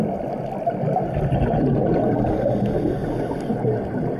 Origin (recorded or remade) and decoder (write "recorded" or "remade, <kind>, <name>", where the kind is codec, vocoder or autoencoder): recorded